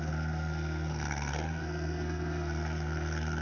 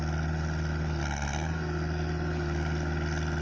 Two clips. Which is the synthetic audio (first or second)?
first